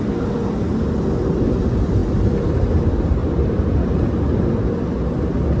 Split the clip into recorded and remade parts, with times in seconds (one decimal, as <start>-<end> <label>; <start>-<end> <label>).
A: 0.0-5.6 recorded